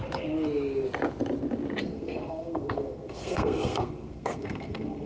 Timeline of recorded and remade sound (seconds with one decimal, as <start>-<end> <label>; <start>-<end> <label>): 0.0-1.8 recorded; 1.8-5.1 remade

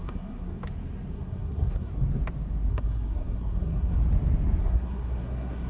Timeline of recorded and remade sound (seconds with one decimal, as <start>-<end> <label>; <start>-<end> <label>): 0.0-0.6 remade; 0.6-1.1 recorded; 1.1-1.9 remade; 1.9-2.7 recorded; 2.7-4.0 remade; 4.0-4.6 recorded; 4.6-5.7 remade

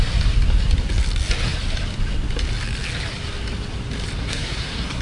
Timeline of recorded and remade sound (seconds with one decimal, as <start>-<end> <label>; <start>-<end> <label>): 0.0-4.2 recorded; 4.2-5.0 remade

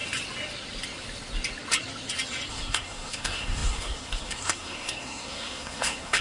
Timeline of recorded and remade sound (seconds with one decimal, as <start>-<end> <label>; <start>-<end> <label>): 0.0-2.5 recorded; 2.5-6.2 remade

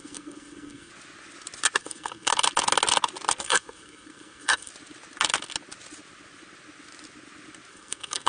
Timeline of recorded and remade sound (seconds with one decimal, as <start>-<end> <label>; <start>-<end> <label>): 0.0-0.9 remade; 0.9-1.8 recorded; 1.8-2.3 remade; 2.3-3.4 recorded; 3.4-4.7 remade; 4.7-7.7 recorded; 7.7-8.3 remade

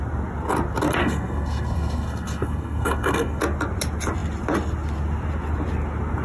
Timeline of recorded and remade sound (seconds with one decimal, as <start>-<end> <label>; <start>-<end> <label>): 0.0-1.0 recorded; 1.0-3.4 remade; 3.4-6.2 recorded